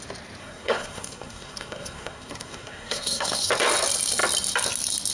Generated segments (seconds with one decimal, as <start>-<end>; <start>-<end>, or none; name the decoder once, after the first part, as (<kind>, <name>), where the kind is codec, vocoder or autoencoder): 0.4-3.5 (codec, SNAC)